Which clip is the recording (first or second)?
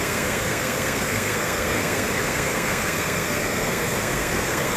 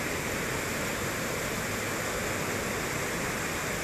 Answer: second